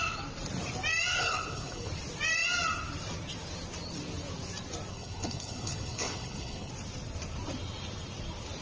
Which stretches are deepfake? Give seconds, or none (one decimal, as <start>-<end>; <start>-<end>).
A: 1.1-1.9; 4.9-6.7